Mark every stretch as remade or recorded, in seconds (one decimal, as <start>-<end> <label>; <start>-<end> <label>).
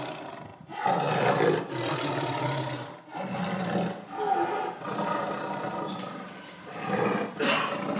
0.0-8.0 recorded